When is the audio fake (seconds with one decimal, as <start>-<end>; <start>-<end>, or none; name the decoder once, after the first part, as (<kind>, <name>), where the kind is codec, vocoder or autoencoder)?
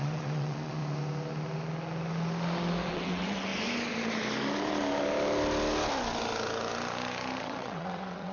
0.0-0.8 (vocoder, WaveNeXt); 2.9-3.5; 7.4-8.3